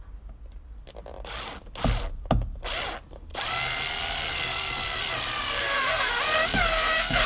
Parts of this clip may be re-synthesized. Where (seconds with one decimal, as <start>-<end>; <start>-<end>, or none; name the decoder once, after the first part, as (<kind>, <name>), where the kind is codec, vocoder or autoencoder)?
5.6-6.1 (codec, SNAC); 6.7-7.3